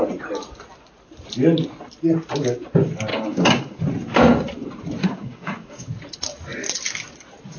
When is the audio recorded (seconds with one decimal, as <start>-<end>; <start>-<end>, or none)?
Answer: 0.0-3.1; 3.8-5.0; 5.9-7.6